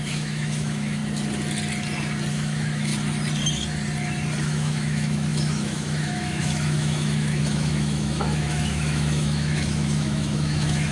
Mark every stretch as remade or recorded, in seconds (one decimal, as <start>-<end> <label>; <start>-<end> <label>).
0.0-1.0 remade; 1.0-2.3 recorded; 2.3-2.9 remade; 2.9-4.4 recorded; 4.4-10.9 remade